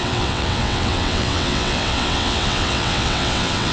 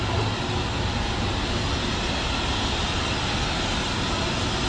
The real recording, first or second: second